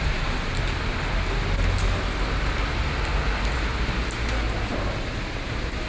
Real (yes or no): yes